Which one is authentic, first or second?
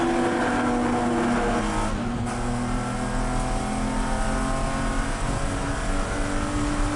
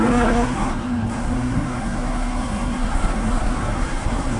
first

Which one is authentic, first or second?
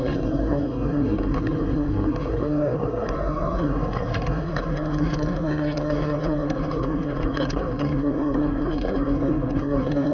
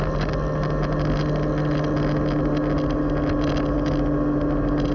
second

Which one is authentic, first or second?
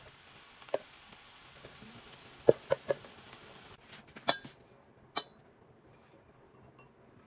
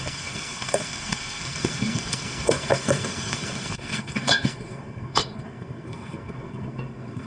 first